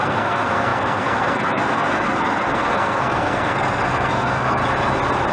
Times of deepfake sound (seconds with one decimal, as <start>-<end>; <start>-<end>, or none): 0.0-4.6

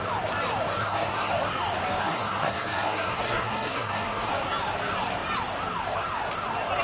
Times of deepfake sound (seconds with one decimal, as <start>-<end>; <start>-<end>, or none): 0.8-1.3; 2.0-4.3

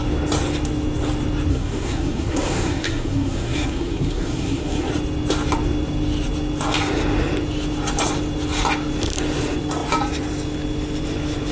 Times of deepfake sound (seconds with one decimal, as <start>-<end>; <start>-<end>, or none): 1.5-4.9

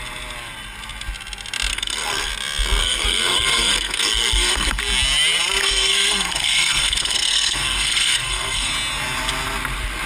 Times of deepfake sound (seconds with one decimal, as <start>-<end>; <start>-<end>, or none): 1.7-2.3; 2.8-4.8; 5.6-8.7

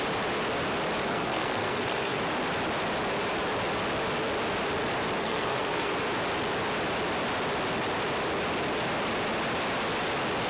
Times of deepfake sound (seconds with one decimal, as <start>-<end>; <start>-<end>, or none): 1.0-2.2; 5.2-5.9

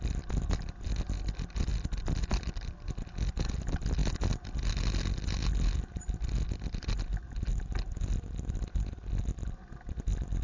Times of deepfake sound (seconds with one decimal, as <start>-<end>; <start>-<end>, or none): none

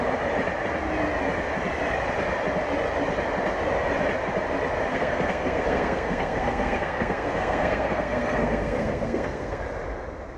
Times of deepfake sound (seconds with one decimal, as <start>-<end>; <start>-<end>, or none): 4.9-9.6